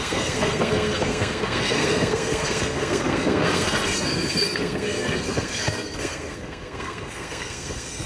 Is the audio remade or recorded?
remade